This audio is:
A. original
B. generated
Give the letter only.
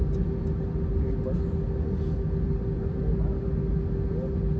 A